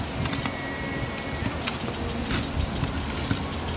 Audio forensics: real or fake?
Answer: real